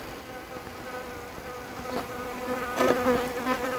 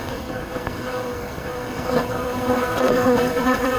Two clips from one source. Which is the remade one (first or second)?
second